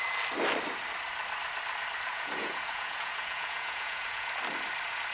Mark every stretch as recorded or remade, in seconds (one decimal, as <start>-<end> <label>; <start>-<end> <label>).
0.0-2.1 recorded; 2.1-4.3 remade; 4.3-5.1 recorded